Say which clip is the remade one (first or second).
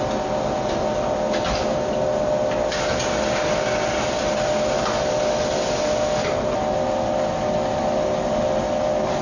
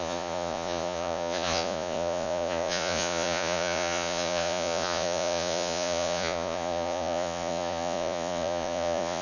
second